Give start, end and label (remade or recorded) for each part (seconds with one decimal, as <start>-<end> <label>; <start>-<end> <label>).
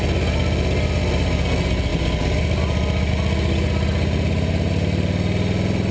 0.0-5.9 recorded